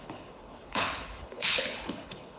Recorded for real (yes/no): no